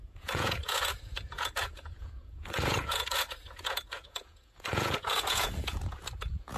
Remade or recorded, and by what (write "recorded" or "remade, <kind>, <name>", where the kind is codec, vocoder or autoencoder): remade, vocoder, Vocos